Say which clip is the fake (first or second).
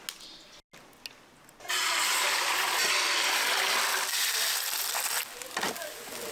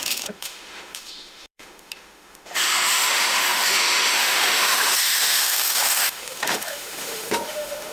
second